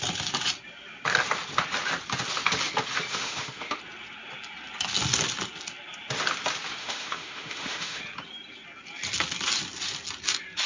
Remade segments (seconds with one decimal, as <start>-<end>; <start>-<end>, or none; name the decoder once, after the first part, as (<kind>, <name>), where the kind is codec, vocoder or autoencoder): 3.1-3.8 (autoencoder, DAC-VAE); 6.8-8.0

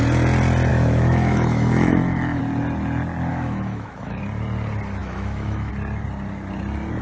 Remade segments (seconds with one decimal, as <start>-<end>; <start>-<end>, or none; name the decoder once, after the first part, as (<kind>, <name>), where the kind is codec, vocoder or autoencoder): 0.7-2.4 (autoencoder, DAC-VAE); 3.3-4.2; 5.0-5.7